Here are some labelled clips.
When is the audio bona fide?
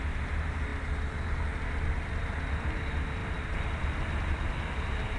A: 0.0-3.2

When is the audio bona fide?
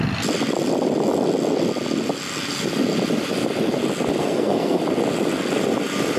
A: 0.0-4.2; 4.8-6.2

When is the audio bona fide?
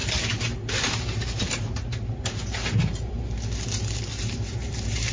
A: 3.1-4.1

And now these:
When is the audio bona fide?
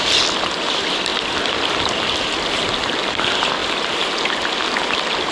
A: 0.0-5.3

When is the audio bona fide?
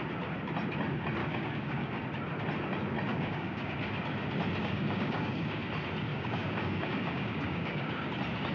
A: 0.0-1.2; 2.0-3.1; 3.7-4.6; 5.6-6.1; 8.1-8.5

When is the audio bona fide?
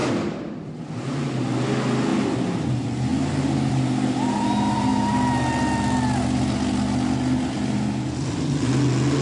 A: 0.0-9.2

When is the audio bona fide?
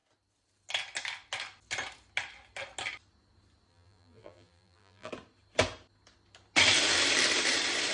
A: 0.0-3.7; 5.1-7.9